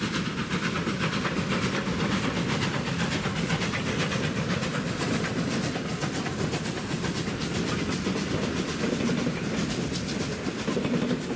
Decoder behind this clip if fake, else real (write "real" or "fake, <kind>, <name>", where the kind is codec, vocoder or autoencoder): real